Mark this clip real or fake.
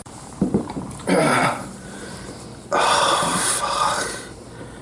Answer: fake